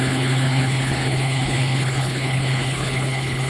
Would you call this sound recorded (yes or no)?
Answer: no